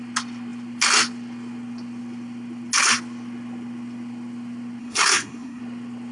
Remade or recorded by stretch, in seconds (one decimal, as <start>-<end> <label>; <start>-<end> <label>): 0.0-4.8 recorded; 4.8-5.6 remade; 5.6-6.1 recorded